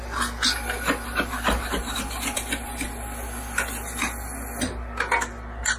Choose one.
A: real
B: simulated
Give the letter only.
A